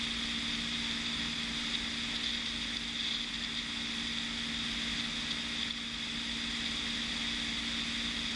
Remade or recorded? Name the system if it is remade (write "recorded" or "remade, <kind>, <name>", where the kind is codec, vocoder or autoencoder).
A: recorded